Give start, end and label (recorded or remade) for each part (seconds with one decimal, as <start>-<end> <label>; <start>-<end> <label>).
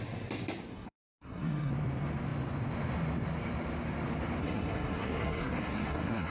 0.0-0.7 recorded; 0.7-1.7 remade; 1.7-4.4 recorded; 4.4-6.3 remade